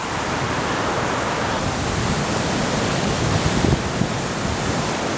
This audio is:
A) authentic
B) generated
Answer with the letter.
A